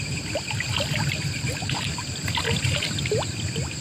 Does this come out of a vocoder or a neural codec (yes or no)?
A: no